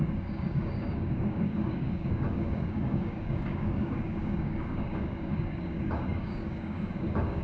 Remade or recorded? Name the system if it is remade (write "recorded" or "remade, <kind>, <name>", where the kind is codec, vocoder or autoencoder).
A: remade, codec, DAC